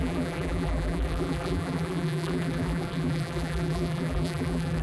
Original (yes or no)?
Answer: no